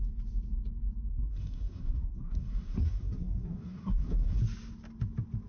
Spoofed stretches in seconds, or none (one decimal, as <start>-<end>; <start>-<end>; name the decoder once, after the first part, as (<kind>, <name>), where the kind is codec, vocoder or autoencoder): 1.1-4.4 (codec, SNAC)